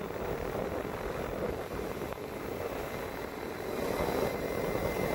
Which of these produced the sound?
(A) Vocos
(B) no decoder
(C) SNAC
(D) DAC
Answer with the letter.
B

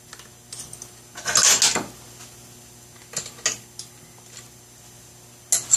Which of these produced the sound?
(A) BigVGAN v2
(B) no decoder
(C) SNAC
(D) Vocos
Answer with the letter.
B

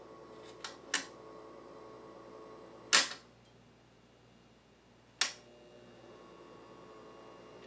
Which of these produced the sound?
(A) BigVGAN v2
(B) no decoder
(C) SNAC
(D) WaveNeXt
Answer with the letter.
B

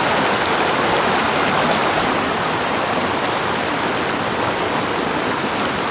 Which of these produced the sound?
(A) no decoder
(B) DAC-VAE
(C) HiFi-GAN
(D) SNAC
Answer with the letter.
A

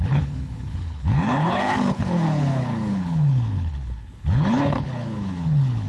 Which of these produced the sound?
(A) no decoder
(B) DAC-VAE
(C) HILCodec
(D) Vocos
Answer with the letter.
C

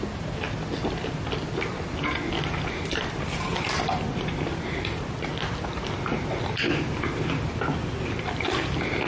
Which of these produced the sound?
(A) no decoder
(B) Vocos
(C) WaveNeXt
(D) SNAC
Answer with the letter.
A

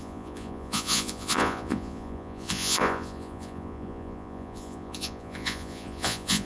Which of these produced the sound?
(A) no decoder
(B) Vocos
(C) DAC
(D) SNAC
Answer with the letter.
B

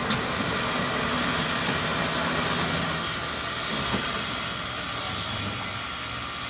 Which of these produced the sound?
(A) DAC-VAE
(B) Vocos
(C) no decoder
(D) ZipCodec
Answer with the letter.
C